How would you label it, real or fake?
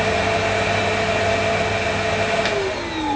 real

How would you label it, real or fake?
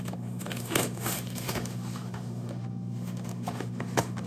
fake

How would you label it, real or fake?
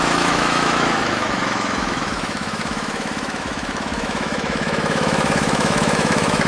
fake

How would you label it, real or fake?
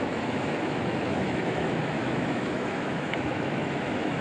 fake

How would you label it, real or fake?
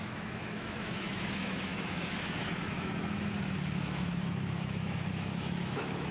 fake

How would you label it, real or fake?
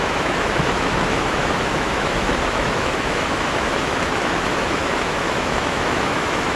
fake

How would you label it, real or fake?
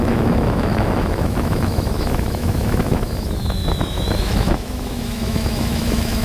fake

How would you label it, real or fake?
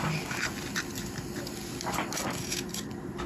real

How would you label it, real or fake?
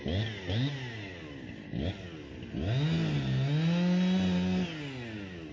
real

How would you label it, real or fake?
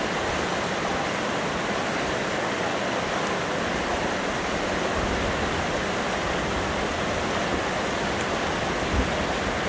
real